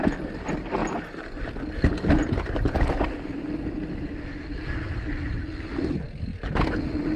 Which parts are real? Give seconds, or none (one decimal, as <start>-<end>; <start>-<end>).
0.0-7.2